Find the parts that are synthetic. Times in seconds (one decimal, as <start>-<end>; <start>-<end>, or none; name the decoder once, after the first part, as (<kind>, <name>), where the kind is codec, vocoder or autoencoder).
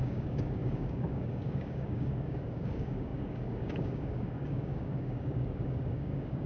0.0-6.5 (codec, DAC)